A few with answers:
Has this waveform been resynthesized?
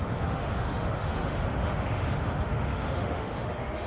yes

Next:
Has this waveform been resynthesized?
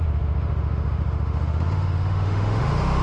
yes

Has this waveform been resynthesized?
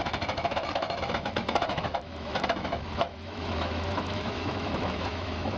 yes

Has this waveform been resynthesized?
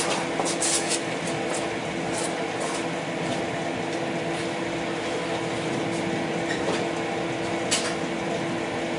no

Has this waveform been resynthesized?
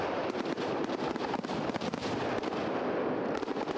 no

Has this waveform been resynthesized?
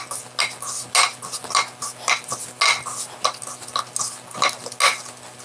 no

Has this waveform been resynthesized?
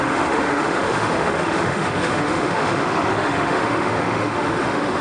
yes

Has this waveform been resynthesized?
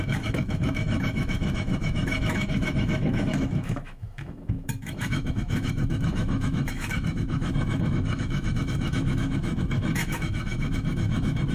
yes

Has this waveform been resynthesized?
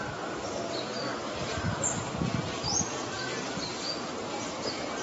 no